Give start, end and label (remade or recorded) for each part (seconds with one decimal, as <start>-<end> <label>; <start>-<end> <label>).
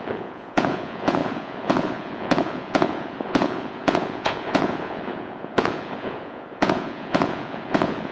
0.0-8.1 remade